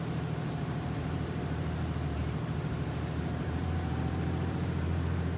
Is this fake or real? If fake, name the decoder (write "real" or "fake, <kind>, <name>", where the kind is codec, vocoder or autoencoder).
fake, vocoder, BigVGAN v2